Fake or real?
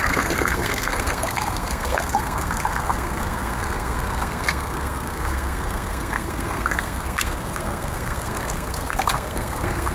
fake